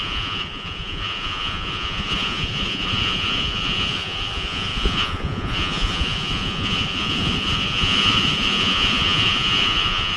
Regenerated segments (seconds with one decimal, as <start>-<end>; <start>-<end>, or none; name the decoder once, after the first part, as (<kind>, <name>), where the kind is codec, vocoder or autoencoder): 0.0-10.2 (vocoder, Vocos)

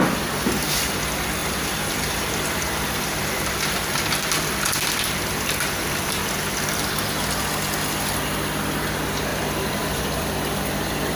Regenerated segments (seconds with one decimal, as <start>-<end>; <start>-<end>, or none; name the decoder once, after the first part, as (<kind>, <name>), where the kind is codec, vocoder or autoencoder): 1.4-6.2 (vocoder, BigVGAN v2); 9.3-10.3

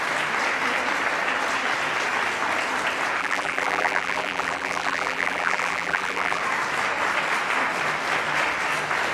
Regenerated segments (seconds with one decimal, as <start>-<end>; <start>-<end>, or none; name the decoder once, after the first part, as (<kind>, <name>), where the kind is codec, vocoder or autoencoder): 3.2-6.4 (vocoder, BigVGAN v2)

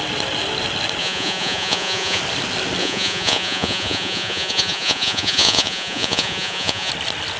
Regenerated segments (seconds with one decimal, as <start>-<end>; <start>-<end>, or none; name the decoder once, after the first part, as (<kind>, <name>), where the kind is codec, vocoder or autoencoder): 1.0-2.2 (vocoder, Vocos); 2.8-6.9

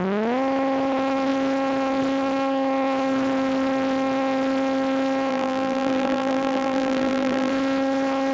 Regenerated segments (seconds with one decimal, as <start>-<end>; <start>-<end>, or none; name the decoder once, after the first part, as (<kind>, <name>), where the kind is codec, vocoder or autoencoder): 5.3-7.5 (vocoder, BigVGAN v2)

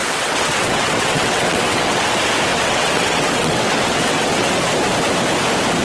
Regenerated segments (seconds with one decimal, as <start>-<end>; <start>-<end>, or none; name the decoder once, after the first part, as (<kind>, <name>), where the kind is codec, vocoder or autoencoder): 0.0-2.1 (vocoder, WaveNeXt); 2.5-4.5